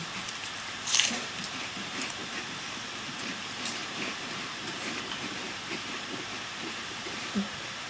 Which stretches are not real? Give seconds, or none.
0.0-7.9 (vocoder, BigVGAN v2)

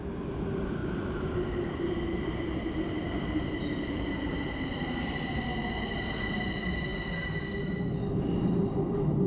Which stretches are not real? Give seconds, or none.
0.8-5.2 (vocoder, BigVGAN v2)